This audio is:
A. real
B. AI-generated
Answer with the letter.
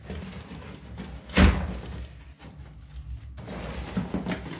A